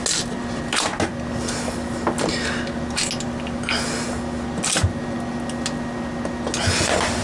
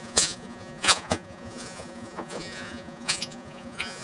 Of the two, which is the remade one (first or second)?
second